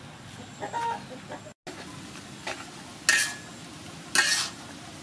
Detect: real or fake real